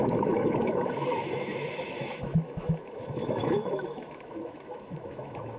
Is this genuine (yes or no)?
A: no